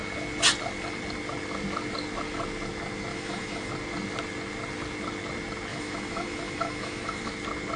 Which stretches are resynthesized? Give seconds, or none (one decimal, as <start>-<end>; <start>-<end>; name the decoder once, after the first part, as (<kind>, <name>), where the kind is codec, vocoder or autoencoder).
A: 3.1-3.7 (autoencoder, DAC-VAE); 5.7-7.3